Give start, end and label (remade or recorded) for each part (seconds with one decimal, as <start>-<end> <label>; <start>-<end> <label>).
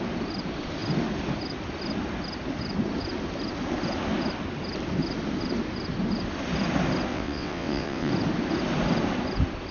0.0-7.1 recorded; 7.1-8.1 remade; 8.1-9.7 recorded